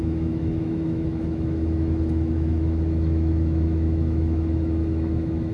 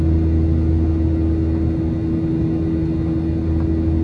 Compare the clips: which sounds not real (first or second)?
first